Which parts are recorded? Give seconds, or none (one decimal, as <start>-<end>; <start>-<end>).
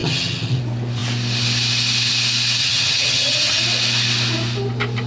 0.6-2.6; 3.6-5.1